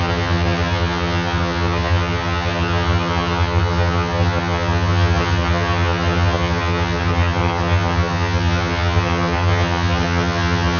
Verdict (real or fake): fake